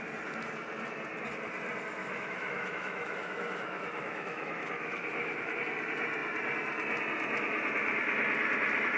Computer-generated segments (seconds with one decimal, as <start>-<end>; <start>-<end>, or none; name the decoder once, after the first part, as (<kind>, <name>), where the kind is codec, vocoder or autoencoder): 2.0-5.6 (autoencoder, DAC-VAE)